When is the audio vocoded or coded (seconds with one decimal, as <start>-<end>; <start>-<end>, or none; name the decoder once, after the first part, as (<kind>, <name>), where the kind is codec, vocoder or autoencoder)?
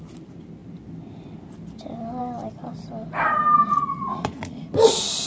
3.7-4.6 (vocoder, Vocos)